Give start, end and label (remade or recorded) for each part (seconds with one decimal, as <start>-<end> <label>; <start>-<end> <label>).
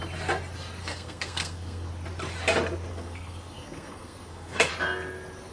0.0-0.8 recorded; 0.8-1.9 remade; 1.9-2.9 recorded; 2.9-4.7 remade; 4.7-5.5 recorded